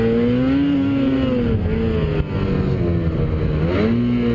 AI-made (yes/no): no